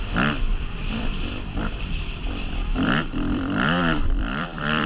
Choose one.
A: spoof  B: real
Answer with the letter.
A